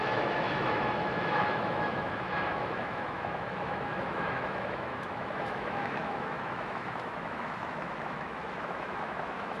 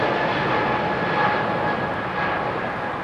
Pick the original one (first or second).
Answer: second